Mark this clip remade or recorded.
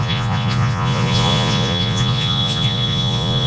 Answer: remade